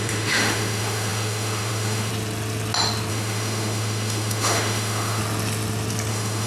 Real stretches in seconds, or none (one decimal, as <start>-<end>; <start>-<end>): 2.1-3.1; 5.2-6.1

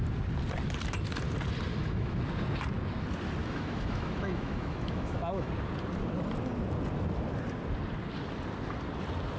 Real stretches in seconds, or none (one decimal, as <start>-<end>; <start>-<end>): 0.0-1.7; 2.2-3.4; 5.5-9.4

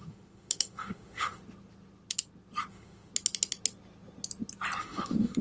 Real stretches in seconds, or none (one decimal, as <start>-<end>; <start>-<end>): 1.4-2.7; 3.1-4.8

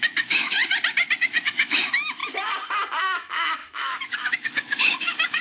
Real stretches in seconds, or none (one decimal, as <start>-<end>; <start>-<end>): 0.6-1.2; 2.2-3.0

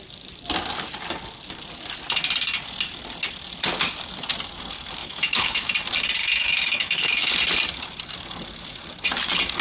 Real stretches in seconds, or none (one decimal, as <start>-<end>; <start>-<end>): 0.0-5.0; 5.7-6.2; 7.3-9.6

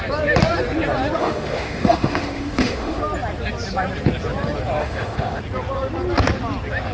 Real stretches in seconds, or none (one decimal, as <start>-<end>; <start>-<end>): 0.0-1.2; 3.0-4.8; 5.4-6.9

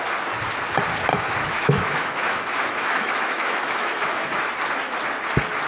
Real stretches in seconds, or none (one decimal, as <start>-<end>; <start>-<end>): 0.0-1.1; 4.5-5.7